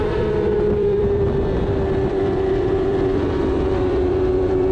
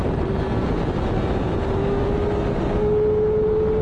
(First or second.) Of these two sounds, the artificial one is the first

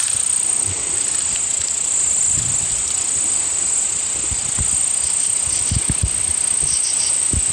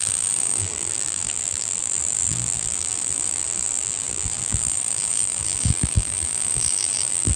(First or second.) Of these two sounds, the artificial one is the second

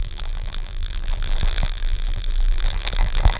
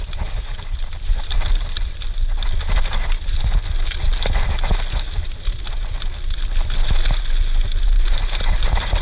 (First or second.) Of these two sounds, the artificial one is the first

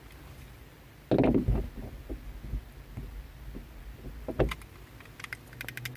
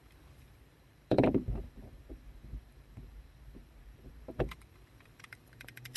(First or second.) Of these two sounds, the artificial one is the second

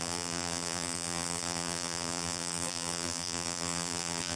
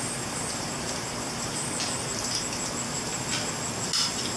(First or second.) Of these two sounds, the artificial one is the first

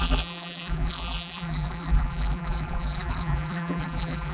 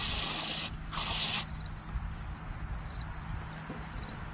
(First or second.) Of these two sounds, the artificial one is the first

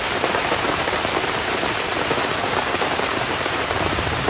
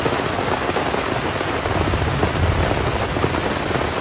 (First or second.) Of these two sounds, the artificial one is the first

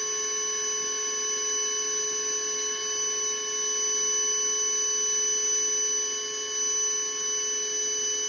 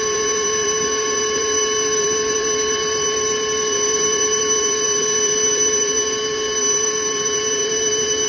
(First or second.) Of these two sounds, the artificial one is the second